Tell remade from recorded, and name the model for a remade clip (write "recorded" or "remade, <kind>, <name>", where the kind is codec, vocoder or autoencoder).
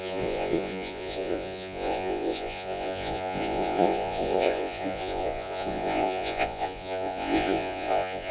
remade, vocoder, Vocos